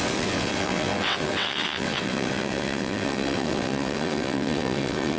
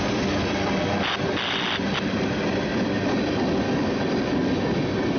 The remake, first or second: first